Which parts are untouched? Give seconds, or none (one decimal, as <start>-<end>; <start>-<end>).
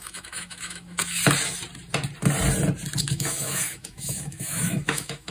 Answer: 1.2-3.0